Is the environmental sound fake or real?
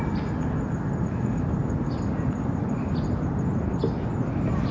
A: real